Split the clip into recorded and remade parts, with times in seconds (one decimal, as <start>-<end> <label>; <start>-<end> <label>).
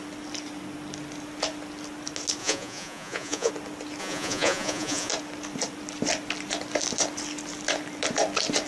0.0-2.4 recorded; 2.4-3.5 remade; 3.5-4.0 recorded; 4.0-5.1 remade; 5.1-8.7 recorded